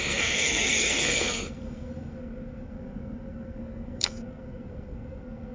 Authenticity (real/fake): fake